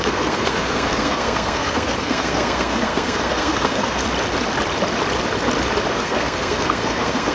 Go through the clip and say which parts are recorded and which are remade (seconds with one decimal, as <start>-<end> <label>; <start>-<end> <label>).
0.0-4.0 remade; 4.0-5.9 recorded; 5.9-7.3 remade